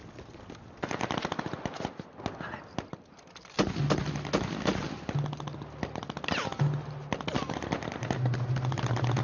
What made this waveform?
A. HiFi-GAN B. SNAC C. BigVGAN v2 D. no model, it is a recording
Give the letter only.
D